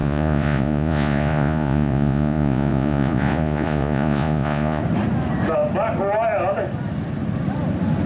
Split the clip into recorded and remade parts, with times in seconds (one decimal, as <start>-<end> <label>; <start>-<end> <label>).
0.0-4.8 remade; 4.8-8.1 recorded